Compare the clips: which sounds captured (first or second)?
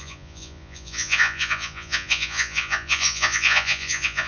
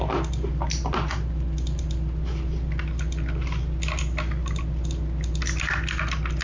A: second